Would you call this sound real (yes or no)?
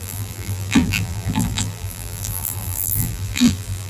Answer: no